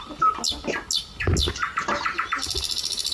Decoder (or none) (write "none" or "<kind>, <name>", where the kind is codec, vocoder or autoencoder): none